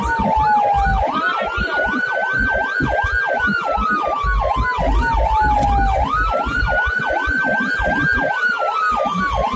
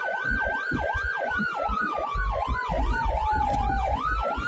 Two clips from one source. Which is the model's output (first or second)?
second